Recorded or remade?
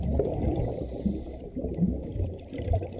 remade